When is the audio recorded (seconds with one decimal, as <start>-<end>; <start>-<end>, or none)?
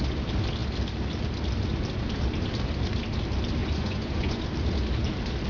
0.0-3.6; 4.4-5.5